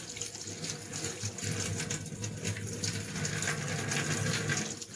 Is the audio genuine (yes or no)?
yes